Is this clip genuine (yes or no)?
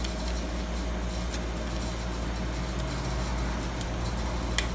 yes